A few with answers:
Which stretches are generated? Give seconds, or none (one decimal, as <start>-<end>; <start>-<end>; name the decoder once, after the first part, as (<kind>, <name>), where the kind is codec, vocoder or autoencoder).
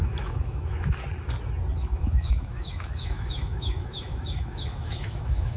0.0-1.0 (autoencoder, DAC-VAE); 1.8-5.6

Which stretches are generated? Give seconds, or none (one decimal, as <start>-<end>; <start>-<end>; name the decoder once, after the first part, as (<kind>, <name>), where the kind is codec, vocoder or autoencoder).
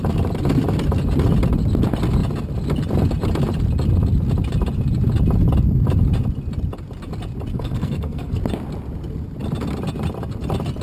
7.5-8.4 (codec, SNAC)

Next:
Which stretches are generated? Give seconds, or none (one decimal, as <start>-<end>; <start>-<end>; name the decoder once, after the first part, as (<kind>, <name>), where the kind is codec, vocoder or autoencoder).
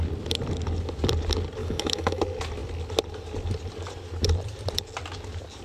1.6-2.2 (autoencoder, DAC-VAE)